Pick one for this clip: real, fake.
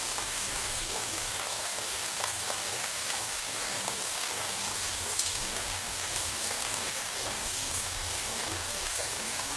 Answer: fake